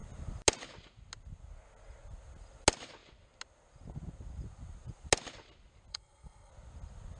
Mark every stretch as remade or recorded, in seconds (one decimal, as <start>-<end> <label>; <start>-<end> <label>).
0.0-5.9 recorded; 5.9-6.5 remade; 6.5-7.2 recorded